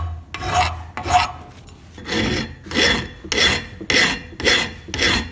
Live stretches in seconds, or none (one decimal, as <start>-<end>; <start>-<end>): 0.0-5.3